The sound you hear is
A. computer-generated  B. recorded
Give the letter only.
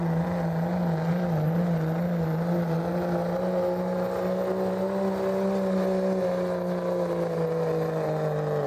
B